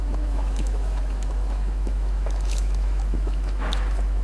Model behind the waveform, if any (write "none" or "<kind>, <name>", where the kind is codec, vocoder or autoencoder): autoencoder, DAC-VAE